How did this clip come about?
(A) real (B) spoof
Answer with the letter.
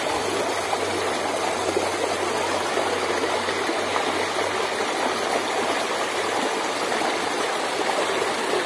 A